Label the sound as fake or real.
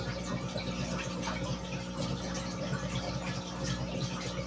real